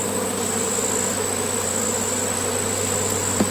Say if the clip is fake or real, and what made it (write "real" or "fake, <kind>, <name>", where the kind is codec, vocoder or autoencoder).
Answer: real